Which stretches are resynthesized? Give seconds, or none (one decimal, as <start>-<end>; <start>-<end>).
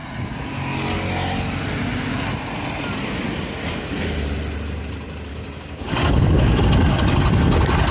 5.3-6.6